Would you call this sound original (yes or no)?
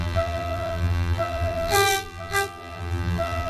no